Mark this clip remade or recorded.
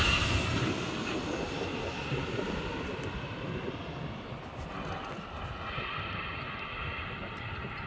recorded